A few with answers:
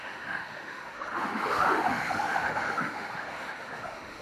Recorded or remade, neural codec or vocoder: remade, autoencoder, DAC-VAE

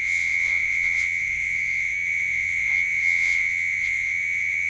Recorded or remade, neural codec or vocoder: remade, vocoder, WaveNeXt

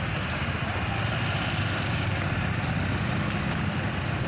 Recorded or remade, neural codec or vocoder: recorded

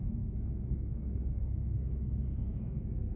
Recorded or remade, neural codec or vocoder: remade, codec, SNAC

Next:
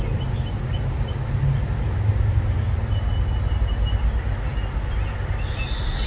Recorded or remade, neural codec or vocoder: recorded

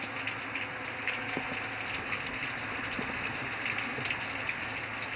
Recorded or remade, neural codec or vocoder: recorded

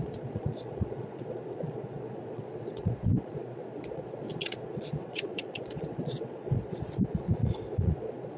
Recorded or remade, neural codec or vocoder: remade, vocoder, Vocos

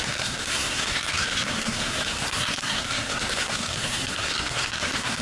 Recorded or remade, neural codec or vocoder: remade, codec, SNAC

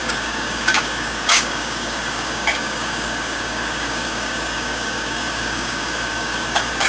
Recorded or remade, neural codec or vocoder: remade, codec, DAC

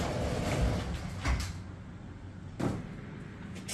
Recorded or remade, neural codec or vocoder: recorded